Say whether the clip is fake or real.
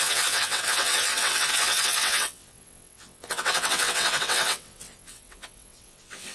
fake